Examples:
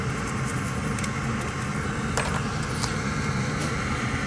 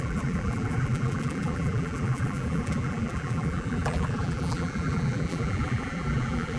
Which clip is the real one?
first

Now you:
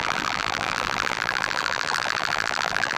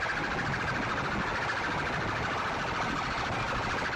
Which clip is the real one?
second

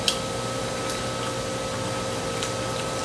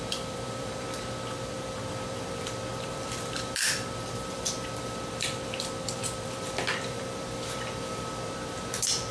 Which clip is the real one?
first